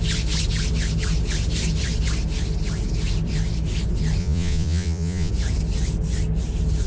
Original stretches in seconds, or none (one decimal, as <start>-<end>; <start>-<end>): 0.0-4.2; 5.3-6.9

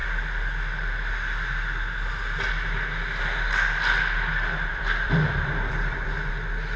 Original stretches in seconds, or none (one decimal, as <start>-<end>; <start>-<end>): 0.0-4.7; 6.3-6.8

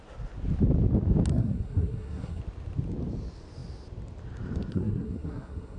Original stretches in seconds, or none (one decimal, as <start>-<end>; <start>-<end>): 0.0-1.3; 2.4-4.7